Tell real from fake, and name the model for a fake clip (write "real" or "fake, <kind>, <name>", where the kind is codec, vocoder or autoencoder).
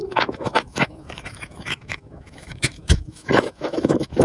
fake, autoencoder, DAC-VAE